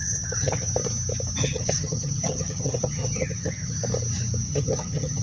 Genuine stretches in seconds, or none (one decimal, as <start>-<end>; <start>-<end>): 0.7-1.4; 3.8-4.5